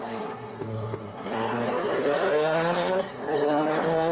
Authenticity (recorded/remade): remade